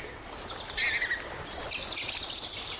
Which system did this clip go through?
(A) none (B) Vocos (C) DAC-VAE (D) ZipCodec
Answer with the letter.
A